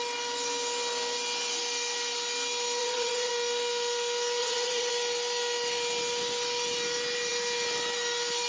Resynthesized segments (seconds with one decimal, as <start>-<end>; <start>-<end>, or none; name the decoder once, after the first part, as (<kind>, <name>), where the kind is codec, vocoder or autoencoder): 2.8-3.3 (vocoder, WaveNeXt); 4.4-4.9